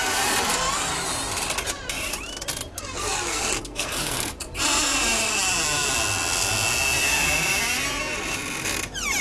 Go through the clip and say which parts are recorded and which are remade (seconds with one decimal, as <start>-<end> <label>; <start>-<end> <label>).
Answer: 0.0-2.7 recorded; 2.7-4.3 remade; 4.3-9.2 recorded